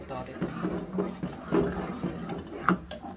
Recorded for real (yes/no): yes